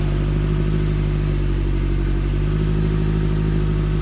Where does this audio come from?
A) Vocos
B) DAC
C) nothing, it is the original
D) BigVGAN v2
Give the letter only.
C